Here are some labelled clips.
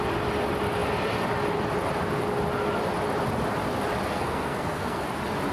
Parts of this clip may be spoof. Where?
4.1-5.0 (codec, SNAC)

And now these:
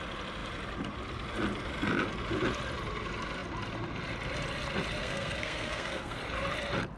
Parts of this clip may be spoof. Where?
5.0-6.2 (codec, SNAC)

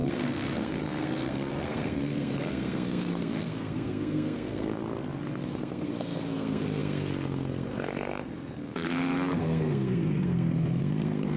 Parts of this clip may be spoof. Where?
0.0-4.8 (codec, SNAC); 5.5-11.4